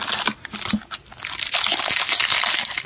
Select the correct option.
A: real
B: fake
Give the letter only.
A